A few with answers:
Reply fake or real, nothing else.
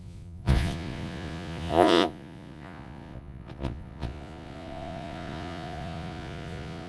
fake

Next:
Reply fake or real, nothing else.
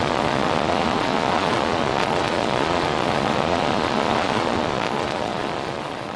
fake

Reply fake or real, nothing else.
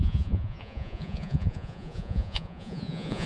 fake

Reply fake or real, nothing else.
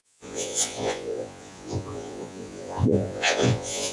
fake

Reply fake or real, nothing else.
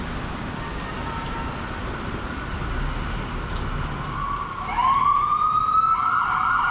real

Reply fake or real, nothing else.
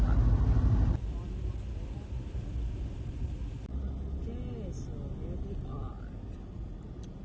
real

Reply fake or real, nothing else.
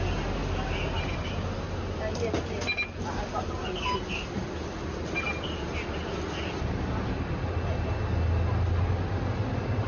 real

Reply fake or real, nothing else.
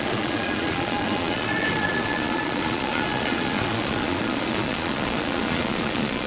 fake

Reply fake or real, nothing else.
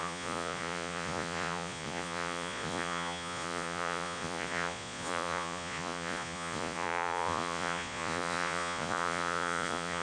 fake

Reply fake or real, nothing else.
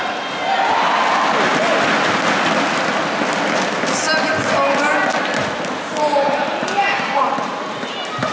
real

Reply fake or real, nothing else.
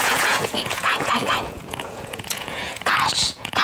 fake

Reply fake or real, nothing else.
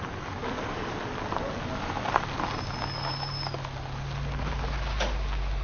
real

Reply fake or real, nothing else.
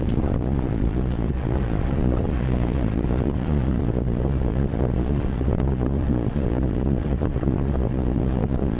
fake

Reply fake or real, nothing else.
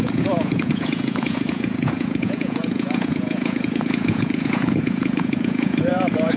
fake